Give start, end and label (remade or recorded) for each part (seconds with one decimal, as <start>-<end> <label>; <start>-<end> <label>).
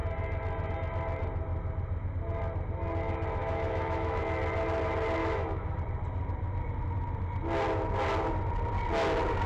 0.0-3.4 recorded; 3.4-4.2 remade; 4.2-5.2 recorded; 5.2-5.8 remade; 5.8-9.5 recorded